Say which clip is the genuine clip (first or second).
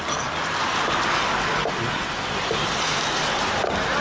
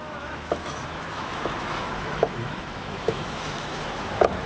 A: first